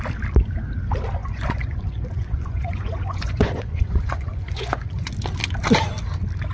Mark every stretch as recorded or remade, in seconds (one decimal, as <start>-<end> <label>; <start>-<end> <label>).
0.0-1.2 recorded; 1.2-5.1 remade; 5.1-6.5 recorded